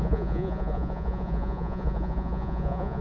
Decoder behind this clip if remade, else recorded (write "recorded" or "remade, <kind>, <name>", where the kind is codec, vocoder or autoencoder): remade, vocoder, Vocos